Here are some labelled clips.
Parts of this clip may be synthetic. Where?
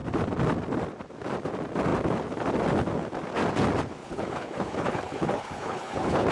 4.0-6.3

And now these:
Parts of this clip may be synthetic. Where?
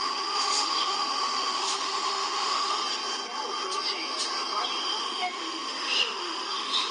0.0-2.8; 4.8-6.9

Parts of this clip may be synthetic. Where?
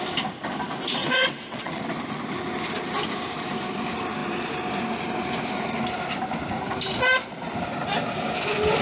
1.0-1.8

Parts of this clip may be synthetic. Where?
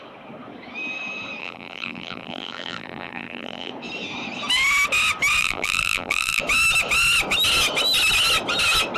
1.4-3.7; 5.4-6.4